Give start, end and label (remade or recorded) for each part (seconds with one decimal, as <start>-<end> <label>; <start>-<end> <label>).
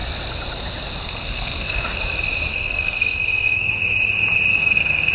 0.0-1.0 recorded; 1.0-2.0 remade; 2.0-2.5 recorded; 2.5-3.7 remade; 3.7-4.5 recorded; 4.5-5.1 remade